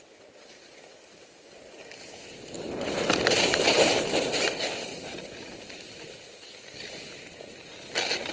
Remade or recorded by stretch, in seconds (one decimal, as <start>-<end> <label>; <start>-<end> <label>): 0.0-4.9 recorded; 4.9-5.5 remade; 5.5-8.3 recorded